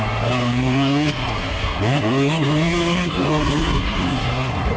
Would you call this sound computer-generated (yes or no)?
yes